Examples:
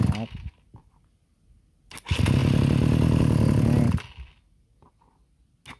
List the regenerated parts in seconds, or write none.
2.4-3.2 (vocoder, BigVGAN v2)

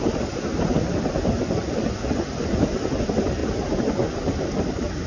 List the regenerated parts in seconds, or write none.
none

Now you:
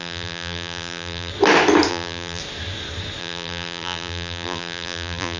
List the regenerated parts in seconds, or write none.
0.0-1.3 (vocoder, BigVGAN v2); 1.9-2.4; 3.2-5.4

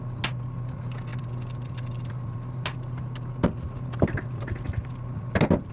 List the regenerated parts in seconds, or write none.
none

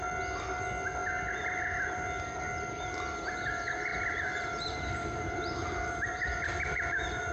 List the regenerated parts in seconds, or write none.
3.9-7.3 (vocoder, BigVGAN v2)